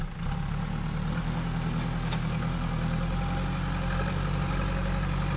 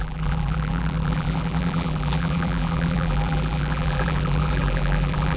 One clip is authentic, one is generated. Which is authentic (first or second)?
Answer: first